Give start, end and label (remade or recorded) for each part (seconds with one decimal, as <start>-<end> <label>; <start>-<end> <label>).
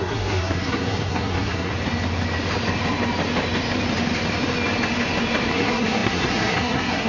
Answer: 0.0-1.7 remade; 1.7-5.5 recorded; 5.5-7.1 remade